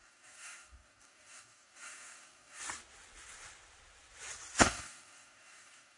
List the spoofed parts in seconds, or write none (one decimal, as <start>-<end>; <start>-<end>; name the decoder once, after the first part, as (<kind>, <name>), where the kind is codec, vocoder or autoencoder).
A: 0.0-2.6 (codec, DAC); 4.6-6.0